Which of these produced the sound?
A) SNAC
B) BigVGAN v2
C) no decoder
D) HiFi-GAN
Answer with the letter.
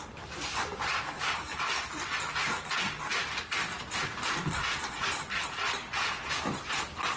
C